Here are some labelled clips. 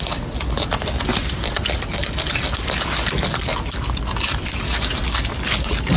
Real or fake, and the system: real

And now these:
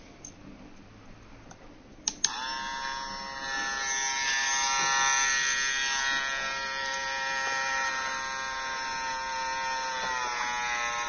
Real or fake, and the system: real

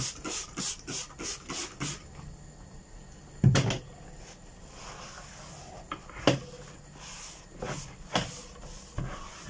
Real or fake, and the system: real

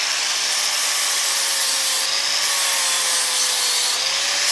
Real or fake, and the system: real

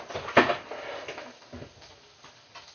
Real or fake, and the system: real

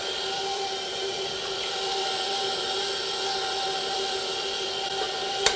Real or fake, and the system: fake, vocoder, BigVGAN v2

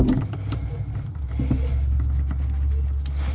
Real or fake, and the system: real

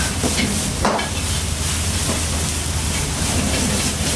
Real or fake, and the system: real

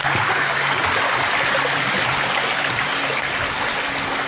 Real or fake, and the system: real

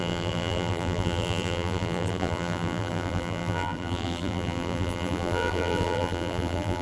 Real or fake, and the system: fake, vocoder, BigVGAN v2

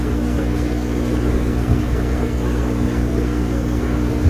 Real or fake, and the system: fake, codec, SNAC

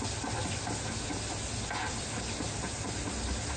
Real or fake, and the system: real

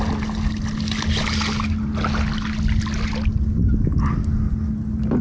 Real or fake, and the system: real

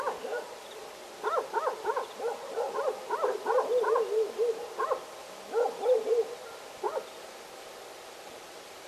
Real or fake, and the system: real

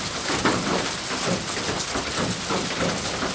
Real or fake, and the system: real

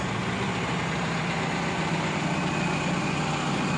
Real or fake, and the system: real